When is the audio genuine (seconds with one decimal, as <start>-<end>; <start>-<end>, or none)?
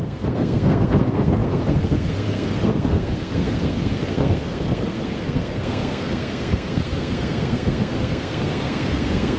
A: none